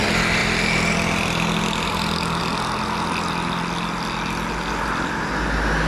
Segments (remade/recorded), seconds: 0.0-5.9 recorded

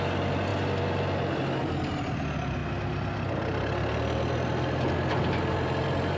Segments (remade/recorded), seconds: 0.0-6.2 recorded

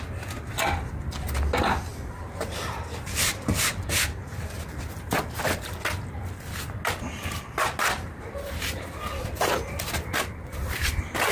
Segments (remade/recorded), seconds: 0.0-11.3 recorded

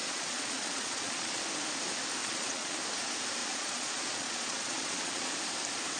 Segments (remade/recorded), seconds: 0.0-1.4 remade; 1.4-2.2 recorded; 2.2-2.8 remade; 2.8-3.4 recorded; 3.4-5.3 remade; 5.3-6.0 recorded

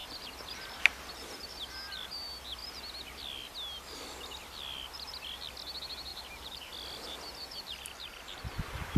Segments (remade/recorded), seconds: 0.0-6.1 recorded; 6.1-6.7 remade; 6.7-9.0 recorded

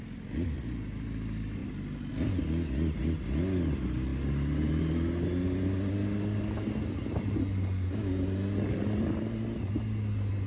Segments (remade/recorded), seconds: 0.0-10.5 recorded

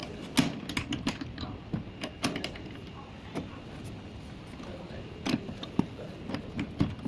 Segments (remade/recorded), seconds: 0.0-7.1 recorded